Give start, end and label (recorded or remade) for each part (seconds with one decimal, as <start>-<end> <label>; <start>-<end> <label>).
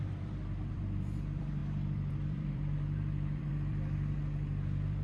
0.0-5.0 remade